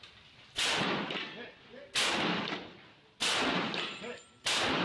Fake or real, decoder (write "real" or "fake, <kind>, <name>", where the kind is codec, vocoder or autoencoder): real